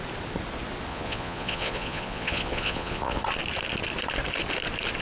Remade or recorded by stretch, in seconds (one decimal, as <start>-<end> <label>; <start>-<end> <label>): 0.0-0.9 recorded; 0.9-3.2 remade; 3.2-5.0 recorded